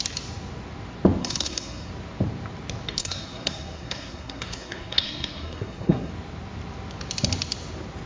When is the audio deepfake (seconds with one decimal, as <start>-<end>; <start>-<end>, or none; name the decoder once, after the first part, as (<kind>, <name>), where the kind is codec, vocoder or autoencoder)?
1.2-1.9 (codec, SNAC); 3.0-6.1